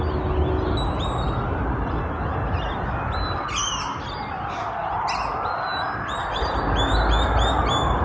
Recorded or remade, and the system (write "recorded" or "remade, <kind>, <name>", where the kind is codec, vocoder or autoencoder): recorded